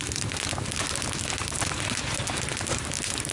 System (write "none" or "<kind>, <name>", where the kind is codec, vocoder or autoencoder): none